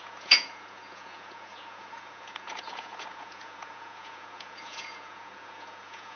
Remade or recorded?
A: remade